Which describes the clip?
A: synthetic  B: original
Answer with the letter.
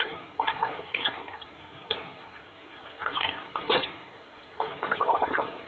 A